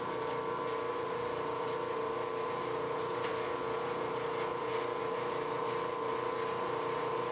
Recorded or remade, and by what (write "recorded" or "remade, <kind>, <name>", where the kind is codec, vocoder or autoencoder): recorded